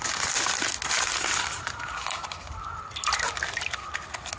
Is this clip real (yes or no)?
yes